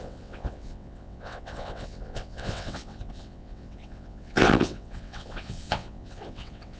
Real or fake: fake